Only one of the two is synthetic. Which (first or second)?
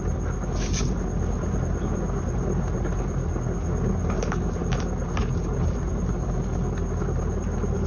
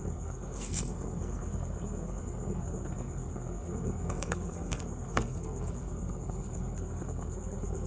second